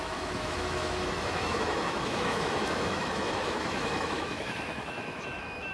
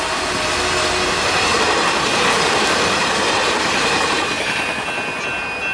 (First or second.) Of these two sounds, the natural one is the second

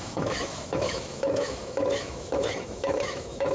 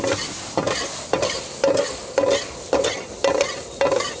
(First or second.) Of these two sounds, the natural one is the second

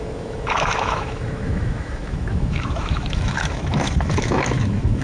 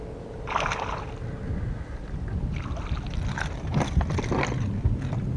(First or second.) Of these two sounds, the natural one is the second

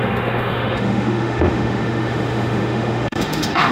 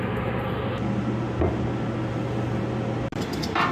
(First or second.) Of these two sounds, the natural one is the second